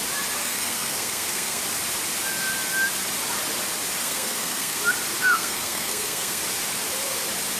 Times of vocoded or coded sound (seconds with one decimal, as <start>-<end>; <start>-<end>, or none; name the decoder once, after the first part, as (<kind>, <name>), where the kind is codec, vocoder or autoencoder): 0.4-1.6 (codec, SNAC); 4.0-4.8; 5.2-6.4